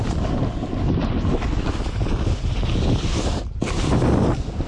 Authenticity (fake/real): real